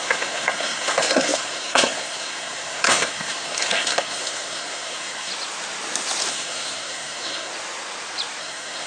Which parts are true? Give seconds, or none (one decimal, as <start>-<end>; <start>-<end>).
5.3-6.3; 7.5-8.4